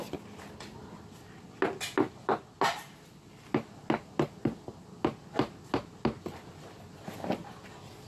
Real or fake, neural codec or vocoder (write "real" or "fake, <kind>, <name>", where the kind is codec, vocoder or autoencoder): real